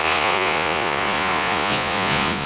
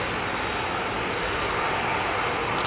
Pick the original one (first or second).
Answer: second